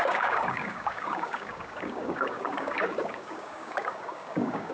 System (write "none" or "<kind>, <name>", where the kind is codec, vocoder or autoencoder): codec, DAC